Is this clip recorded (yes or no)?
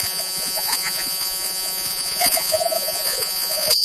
no